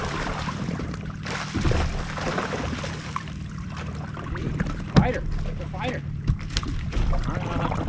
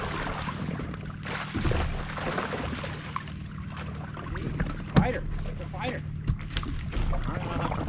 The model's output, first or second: first